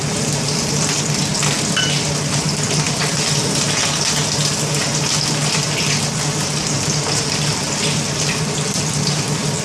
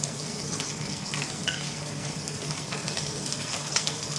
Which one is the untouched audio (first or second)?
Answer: first